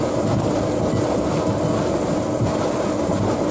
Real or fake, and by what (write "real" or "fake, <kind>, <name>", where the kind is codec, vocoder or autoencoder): real